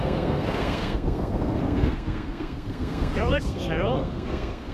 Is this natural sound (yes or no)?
no